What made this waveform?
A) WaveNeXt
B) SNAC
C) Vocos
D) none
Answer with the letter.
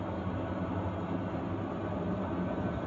D